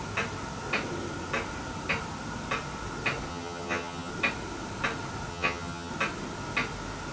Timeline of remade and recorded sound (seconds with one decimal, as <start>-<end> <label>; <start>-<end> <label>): 0.0-3.3 recorded; 3.3-4.1 remade; 4.1-5.3 recorded; 5.3-5.9 remade; 5.9-7.1 recorded